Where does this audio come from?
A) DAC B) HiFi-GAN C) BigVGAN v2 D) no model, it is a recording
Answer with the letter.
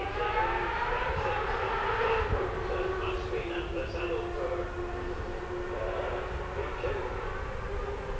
D